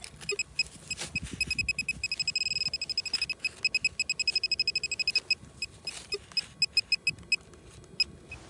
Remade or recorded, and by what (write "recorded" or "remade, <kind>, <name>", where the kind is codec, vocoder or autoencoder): recorded